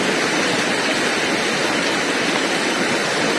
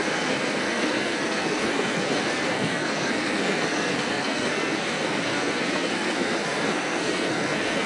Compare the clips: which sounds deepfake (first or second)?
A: second